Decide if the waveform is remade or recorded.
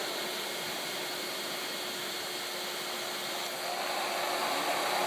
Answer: recorded